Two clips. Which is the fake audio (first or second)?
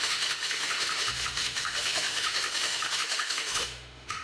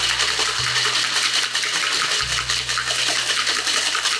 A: first